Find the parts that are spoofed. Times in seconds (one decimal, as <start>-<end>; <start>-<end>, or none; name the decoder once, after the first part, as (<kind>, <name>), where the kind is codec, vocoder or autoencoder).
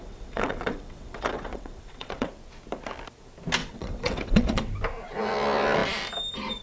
0.0-2.3 (vocoder, WaveNeXt); 3.6-4.7